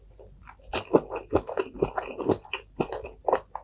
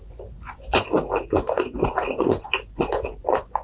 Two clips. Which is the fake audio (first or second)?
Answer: second